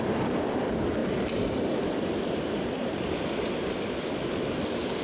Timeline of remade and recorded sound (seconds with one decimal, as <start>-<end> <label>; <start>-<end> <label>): 0.0-5.0 recorded